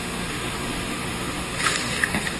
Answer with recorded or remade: remade